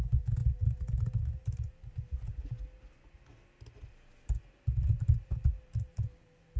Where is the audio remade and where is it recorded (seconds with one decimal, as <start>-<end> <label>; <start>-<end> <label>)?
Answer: 0.0-6.6 recorded